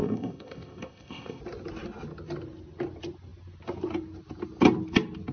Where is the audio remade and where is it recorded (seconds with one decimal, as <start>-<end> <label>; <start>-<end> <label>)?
0.0-1.4 remade; 1.4-5.3 recorded